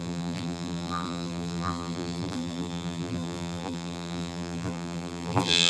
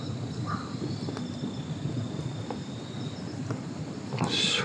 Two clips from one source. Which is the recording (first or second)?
second